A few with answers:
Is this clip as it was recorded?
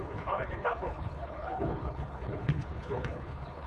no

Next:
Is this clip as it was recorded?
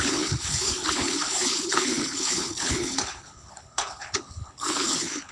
no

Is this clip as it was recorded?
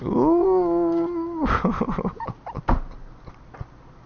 yes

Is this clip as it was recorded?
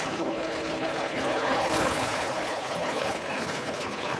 no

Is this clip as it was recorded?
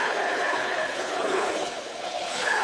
no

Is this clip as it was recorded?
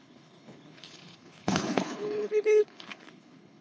no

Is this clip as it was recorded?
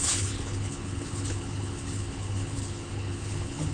no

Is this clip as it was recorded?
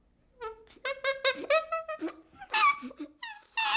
yes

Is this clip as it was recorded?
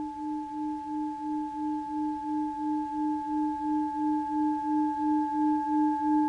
yes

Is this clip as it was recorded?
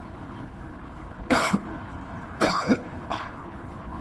no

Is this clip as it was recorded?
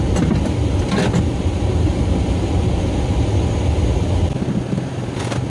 yes